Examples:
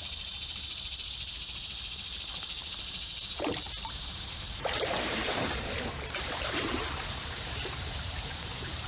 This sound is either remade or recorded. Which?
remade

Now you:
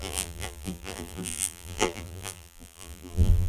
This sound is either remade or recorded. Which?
remade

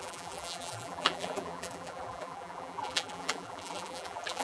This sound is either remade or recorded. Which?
remade